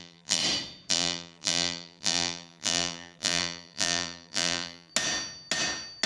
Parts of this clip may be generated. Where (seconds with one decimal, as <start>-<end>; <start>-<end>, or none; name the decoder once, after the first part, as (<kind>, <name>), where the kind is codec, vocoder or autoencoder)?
0.0-0.4 (vocoder, BigVGAN v2); 0.9-4.9

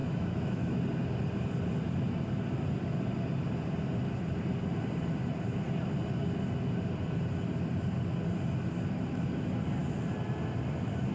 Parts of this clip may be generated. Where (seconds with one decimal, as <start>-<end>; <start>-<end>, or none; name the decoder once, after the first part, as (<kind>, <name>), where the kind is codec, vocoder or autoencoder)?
0.0-0.8 (autoencoder, DAC-VAE)

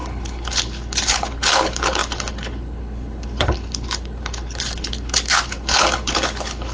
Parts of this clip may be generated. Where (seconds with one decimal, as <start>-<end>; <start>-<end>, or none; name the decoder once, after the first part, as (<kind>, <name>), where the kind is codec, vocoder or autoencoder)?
0.0-6.7 (codec, HILCodec)

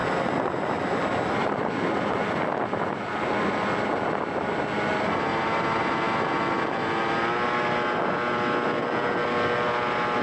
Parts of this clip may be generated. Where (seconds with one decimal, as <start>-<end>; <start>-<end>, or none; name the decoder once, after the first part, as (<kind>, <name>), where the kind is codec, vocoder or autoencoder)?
none

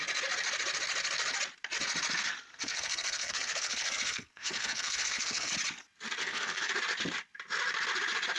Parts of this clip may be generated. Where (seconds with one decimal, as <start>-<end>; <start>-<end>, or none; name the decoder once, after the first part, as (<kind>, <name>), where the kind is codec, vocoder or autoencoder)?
2.5-5.5 (codec, SNAC); 6.2-6.7